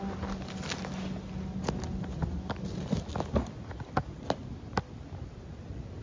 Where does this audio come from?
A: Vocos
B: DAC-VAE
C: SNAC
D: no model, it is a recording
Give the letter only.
D